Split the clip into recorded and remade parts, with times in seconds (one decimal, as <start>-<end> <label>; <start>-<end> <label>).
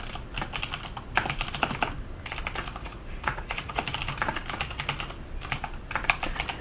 0.0-2.6 recorded; 2.6-3.8 remade; 3.8-6.6 recorded